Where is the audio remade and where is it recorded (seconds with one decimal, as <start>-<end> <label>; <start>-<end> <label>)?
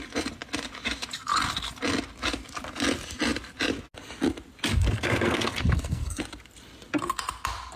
0.0-4.7 recorded; 4.7-6.2 remade; 6.2-7.8 recorded